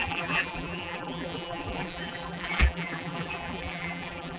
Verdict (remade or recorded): remade